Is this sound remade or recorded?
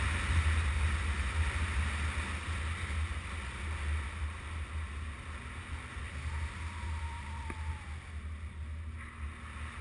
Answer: recorded